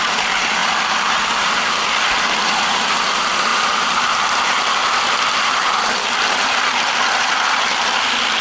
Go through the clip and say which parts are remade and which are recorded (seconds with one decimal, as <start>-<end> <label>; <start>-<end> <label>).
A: 0.0-3.5 recorded; 3.5-6.5 remade; 6.5-8.4 recorded